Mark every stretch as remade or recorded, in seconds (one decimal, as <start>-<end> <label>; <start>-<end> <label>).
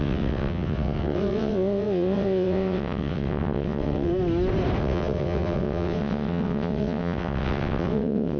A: 0.0-4.1 remade; 4.1-4.8 recorded; 4.8-8.4 remade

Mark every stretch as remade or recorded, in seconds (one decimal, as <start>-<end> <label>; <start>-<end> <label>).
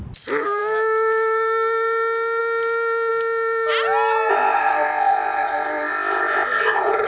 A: 0.0-4.3 recorded; 4.3-7.1 remade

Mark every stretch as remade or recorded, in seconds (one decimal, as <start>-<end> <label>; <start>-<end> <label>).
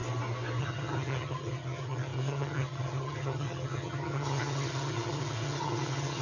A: 0.0-0.6 recorded; 0.6-6.2 remade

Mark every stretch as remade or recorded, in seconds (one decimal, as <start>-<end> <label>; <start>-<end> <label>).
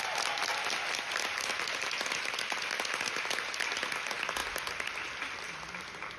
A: 0.0-6.2 recorded